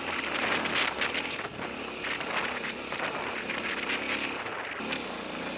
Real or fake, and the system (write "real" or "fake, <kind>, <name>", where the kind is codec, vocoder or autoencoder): real